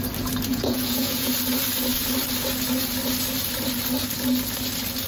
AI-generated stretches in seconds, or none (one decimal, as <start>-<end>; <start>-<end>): 0.5-1.3